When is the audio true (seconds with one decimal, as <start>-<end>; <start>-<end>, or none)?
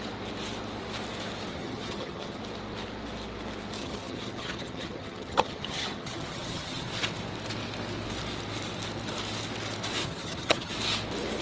0.0-1.5; 2.4-3.8; 6.9-10.0; 10.7-11.4